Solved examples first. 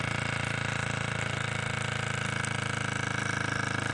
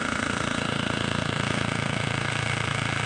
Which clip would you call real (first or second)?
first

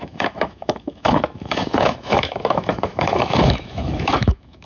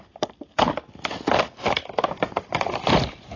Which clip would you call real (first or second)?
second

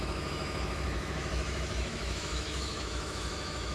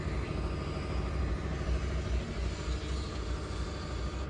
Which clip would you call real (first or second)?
second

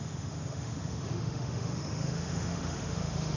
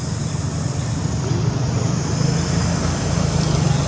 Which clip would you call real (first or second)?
second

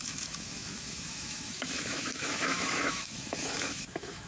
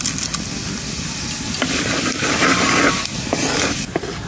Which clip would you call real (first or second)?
second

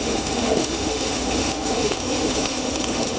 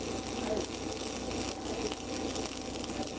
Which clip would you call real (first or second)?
second